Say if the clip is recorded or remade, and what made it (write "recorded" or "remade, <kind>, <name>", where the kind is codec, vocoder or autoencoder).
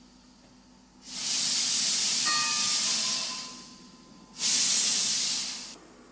recorded